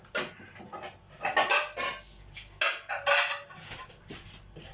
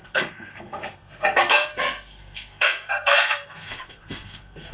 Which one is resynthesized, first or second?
second